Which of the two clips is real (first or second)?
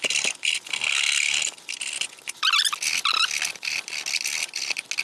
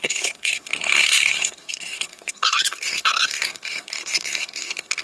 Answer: first